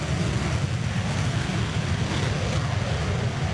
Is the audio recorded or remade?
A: recorded